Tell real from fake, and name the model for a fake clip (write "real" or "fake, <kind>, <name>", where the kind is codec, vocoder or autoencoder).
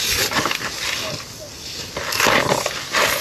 real